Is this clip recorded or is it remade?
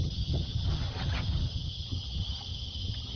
remade